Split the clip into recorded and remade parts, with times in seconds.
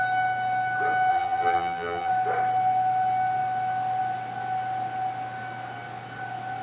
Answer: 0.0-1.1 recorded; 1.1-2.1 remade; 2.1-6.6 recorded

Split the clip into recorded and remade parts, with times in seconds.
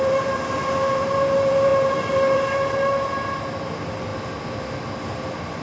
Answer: 0.0-4.1 remade; 4.1-4.9 recorded; 4.9-5.6 remade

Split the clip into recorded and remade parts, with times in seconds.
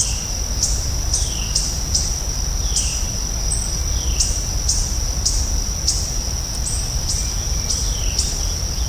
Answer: 0.0-8.9 recorded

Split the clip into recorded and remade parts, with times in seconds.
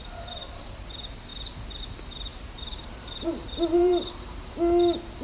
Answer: 0.0-2.3 recorded; 2.3-4.5 remade; 4.5-5.2 recorded